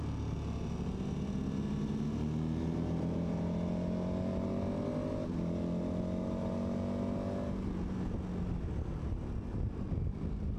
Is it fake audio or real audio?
real